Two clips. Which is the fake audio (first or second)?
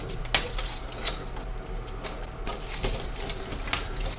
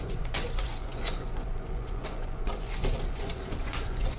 second